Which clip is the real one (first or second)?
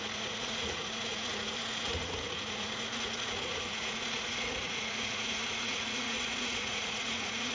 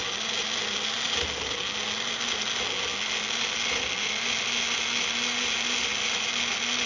second